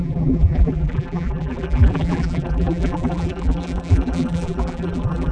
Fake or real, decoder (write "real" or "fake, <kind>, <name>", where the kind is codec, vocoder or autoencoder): fake, vocoder, BigVGAN v2